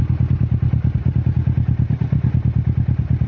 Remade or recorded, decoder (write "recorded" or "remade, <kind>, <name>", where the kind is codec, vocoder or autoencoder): recorded